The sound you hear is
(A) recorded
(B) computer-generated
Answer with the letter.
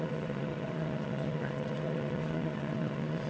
B